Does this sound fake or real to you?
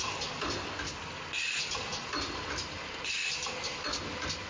real